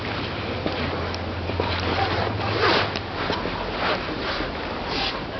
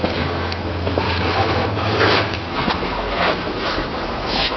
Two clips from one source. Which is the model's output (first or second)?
second